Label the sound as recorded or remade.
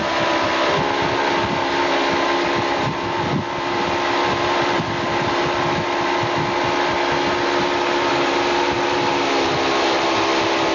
recorded